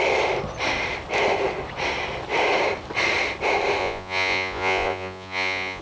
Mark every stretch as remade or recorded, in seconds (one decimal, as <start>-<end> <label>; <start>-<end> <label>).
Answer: 0.0-3.8 recorded; 3.8-5.8 remade